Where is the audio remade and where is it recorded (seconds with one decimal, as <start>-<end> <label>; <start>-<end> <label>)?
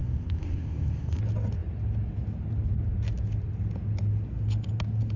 0.0-1.2 remade; 1.2-5.2 recorded